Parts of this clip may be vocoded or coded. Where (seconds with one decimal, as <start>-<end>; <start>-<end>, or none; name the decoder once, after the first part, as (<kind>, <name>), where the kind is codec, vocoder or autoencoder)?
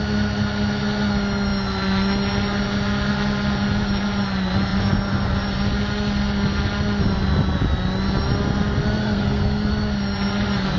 9.0-9.7 (codec, SNAC)